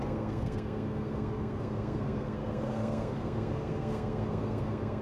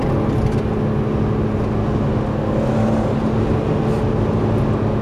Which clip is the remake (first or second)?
first